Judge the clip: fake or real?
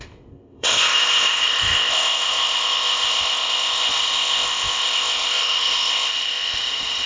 fake